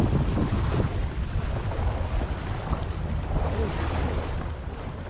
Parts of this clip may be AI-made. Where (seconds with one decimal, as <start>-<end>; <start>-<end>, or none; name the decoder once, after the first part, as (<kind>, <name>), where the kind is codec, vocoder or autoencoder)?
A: 0.9-4.0 (vocoder, BigVGAN v2)